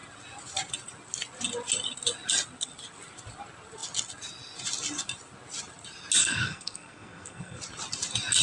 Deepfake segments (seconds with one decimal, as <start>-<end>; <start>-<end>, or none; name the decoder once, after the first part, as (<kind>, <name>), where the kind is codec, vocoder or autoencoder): 6.2-7.6 (codec, SNAC)